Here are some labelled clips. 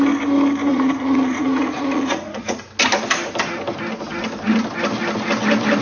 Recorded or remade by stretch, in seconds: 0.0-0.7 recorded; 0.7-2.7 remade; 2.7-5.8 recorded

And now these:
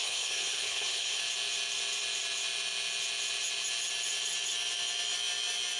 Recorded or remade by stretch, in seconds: 0.0-1.2 remade; 1.2-5.8 recorded

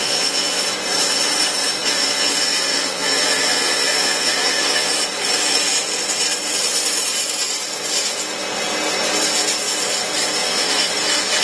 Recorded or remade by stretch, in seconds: 0.0-0.6 remade; 0.6-1.8 recorded; 1.8-4.9 remade; 4.9-10.4 recorded; 10.4-10.9 remade; 10.9-11.4 recorded

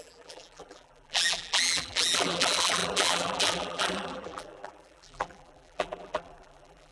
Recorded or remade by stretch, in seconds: 0.0-6.9 remade

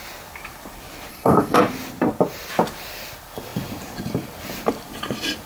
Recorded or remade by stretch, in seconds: 0.0-1.1 recorded; 1.1-1.6 remade; 1.6-5.5 recorded

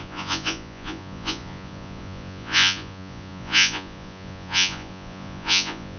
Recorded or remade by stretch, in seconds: 0.0-6.0 remade

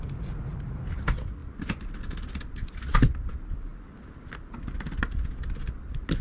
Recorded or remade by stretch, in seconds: 0.0-6.2 recorded